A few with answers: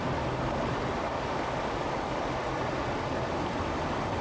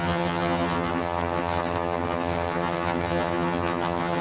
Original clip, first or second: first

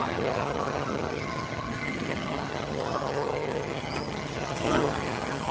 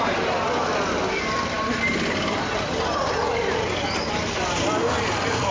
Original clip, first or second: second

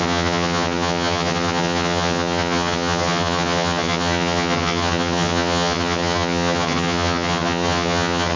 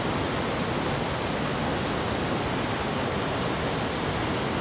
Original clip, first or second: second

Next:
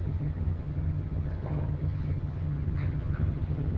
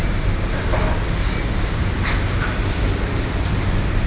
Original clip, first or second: second